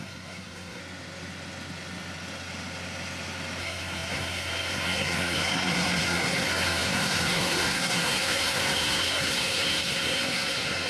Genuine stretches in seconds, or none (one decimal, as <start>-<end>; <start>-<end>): 0.8-3.6